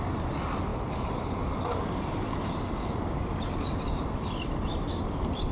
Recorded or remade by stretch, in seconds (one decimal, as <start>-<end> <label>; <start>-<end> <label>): 0.0-5.5 recorded